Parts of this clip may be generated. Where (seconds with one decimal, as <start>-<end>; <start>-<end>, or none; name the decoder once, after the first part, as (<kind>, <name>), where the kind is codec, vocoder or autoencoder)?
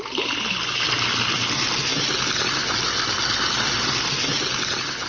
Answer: none